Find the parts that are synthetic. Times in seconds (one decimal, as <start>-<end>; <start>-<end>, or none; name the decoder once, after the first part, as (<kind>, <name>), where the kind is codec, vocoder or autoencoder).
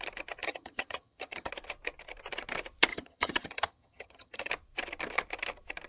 0.4-1.5 (vocoder, HiFi-GAN); 2.9-4.5